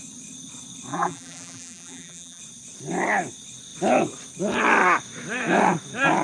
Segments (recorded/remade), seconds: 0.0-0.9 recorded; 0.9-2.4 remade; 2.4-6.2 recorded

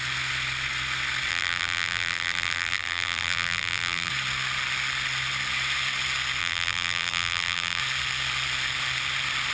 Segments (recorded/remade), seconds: 0.0-1.3 recorded; 1.3-4.1 remade; 4.1-6.4 recorded; 6.4-7.8 remade; 7.8-9.5 recorded

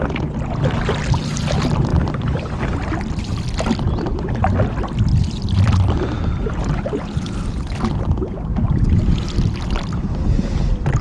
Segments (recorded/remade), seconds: 0.0-1.9 recorded; 1.9-2.4 remade; 2.4-11.0 recorded

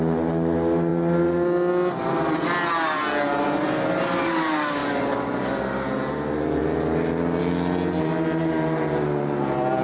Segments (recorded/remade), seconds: 0.0-9.8 recorded